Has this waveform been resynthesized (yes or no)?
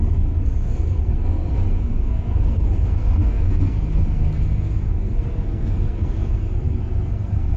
yes